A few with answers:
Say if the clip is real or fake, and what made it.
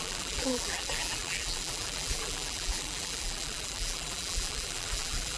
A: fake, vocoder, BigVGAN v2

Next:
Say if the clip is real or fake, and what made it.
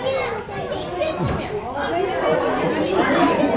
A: real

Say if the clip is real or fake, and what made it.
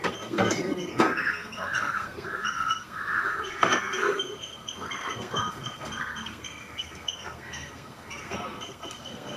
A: fake, codec, SNAC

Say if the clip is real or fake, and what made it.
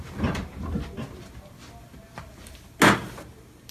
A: real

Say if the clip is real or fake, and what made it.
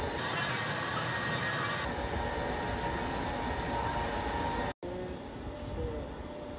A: real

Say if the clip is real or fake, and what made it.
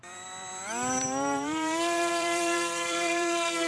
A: fake, vocoder, BigVGAN v2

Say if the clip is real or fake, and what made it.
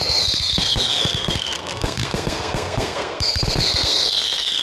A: fake, codec, SNAC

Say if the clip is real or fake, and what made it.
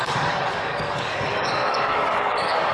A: fake, codec, DAC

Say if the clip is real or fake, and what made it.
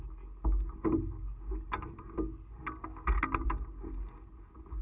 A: real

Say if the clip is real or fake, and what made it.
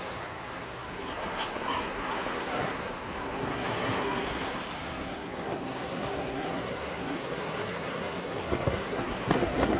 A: fake, codec, SNAC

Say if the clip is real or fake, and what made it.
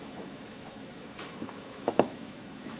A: fake, autoencoder, DAC-VAE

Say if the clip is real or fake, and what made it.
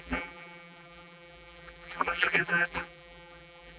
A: fake, vocoder, BigVGAN v2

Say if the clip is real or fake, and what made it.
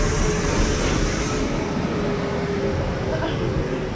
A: real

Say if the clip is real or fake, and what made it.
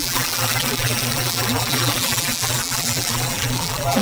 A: fake, vocoder, BigVGAN v2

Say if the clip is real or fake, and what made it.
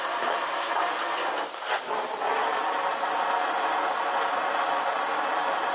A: real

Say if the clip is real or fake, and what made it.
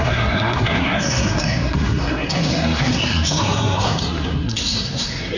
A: fake, codec, SNAC